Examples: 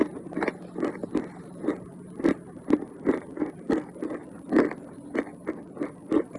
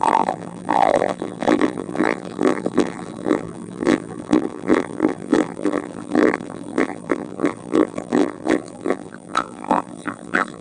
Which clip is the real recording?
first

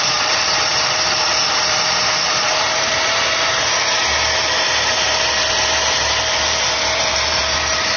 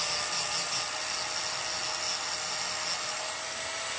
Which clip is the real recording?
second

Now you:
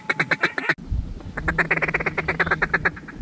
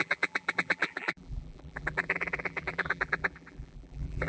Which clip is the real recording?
first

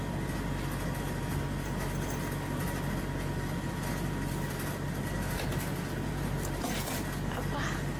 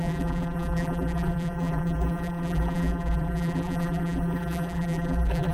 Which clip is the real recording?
first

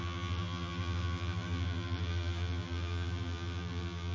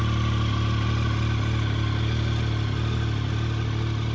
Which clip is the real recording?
second